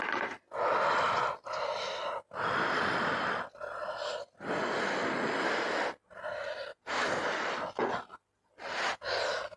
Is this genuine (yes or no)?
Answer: yes